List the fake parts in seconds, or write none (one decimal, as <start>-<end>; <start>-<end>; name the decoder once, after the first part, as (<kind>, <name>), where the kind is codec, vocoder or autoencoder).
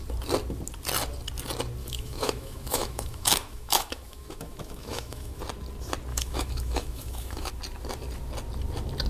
1.8-5.4 (autoencoder, DAC-VAE); 6.1-7.5